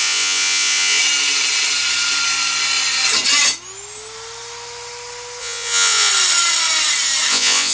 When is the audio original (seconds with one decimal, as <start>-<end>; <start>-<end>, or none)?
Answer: 1.0-5.4; 6.1-7.3